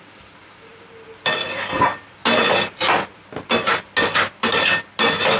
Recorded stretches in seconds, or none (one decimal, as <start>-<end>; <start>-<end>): 0.0-5.4